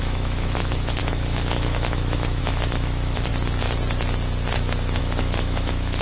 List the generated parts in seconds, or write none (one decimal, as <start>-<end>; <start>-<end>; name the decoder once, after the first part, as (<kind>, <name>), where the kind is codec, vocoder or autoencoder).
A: 0.0-3.3 (autoencoder, DAC-VAE); 5.0-6.0